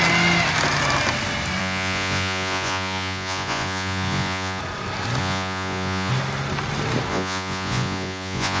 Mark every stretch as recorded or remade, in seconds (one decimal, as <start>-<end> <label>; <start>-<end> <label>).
0.0-1.6 recorded; 1.6-4.6 remade; 4.6-5.2 recorded; 5.2-6.1 remade; 6.1-7.1 recorded; 7.1-8.6 remade